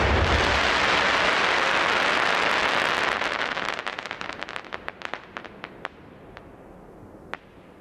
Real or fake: real